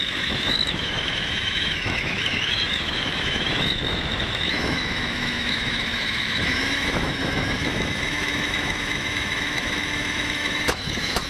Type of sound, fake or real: fake